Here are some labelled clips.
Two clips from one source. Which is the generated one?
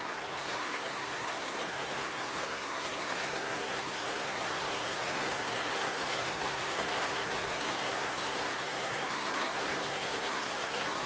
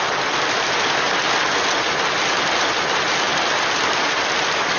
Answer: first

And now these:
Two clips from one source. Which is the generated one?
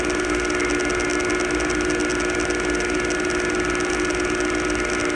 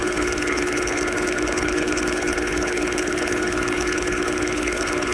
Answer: second